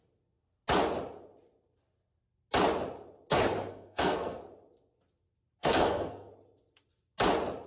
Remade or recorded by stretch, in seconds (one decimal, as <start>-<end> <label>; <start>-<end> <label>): 0.0-3.7 recorded; 3.7-4.4 remade; 4.4-5.6 recorded; 5.6-6.3 remade; 6.3-7.7 recorded